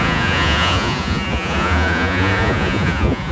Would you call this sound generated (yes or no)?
yes